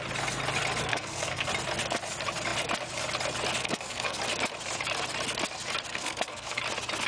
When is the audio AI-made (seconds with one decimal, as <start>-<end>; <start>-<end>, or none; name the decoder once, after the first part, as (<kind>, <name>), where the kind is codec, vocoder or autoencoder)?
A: 0.9-1.5 (codec, SNAC); 3.6-4.2; 5.9-6.6